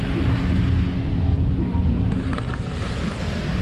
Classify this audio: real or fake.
real